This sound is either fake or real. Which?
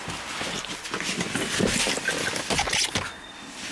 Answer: real